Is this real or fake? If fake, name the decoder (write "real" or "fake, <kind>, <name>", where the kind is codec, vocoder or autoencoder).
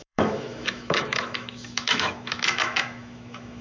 fake, autoencoder, DAC-VAE